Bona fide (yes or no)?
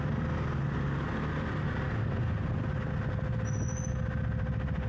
yes